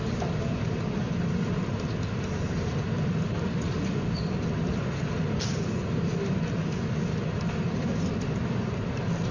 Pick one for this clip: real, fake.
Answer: real